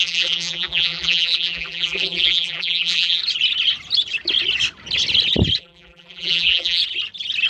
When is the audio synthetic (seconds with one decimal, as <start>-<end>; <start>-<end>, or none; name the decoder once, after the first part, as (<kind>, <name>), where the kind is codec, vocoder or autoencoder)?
0.0-3.2 (vocoder, BigVGAN v2); 5.6-6.8